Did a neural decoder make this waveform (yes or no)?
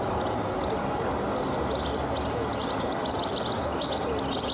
no